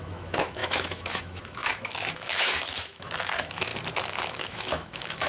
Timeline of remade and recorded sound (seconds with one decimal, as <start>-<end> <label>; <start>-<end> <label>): 0.0-3.7 remade; 3.7-4.2 recorded; 4.2-5.3 remade